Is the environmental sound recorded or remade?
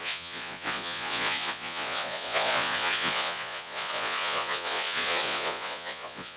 remade